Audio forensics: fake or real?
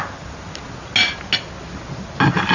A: real